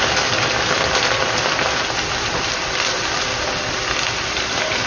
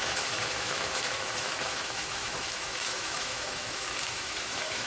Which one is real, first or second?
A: first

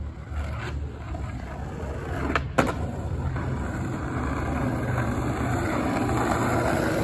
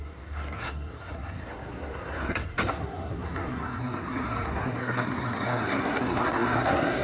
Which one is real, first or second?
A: first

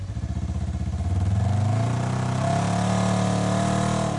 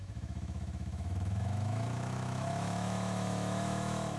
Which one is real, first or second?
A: first